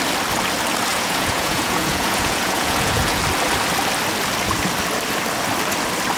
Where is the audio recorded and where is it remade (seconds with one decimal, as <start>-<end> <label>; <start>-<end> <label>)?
0.0-0.9 recorded; 0.9-3.2 remade; 3.2-6.2 recorded